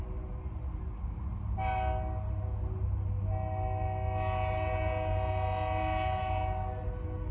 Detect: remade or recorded recorded